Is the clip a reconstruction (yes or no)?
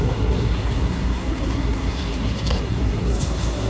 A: yes